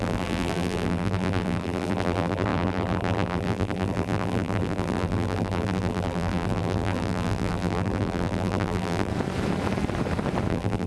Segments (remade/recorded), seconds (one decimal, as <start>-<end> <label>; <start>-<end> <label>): 0.0-9.1 remade; 9.1-10.5 recorded; 10.5-10.9 remade